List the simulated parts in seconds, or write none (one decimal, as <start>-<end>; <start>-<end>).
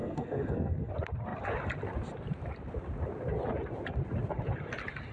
0.0-0.9